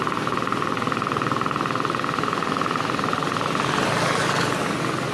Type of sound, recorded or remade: recorded